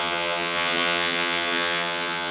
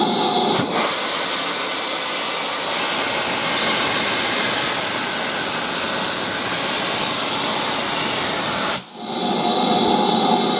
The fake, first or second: first